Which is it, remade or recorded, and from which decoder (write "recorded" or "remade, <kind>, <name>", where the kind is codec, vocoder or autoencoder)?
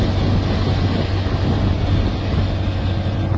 recorded